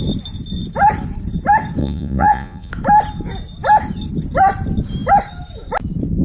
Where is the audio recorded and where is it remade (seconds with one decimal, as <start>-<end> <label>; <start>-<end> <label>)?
0.0-1.8 recorded; 1.8-2.7 remade; 2.7-6.2 recorded